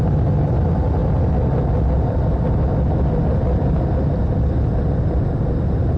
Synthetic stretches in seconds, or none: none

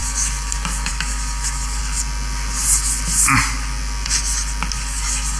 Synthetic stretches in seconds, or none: 0.0-1.8 (codec, DAC); 4.7-5.4

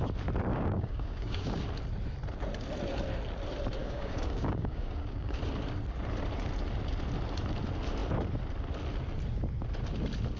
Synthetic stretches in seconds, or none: 0.5-1.5 (codec, DAC); 3.8-5.4

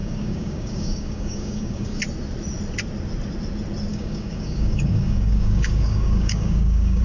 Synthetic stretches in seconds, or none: 0.0-2.0 (codec, DAC); 3.9-7.0